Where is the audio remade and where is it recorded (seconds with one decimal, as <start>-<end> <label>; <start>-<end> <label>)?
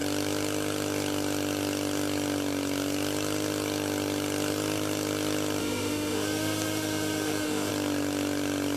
0.0-5.6 recorded; 5.6-7.7 remade; 7.7-8.8 recorded